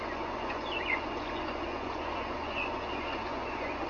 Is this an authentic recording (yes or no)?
no